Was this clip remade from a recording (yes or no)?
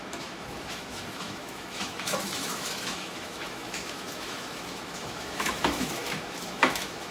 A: yes